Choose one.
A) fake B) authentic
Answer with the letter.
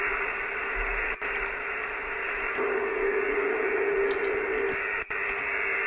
B